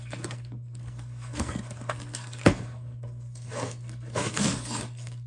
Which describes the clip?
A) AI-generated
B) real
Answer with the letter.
A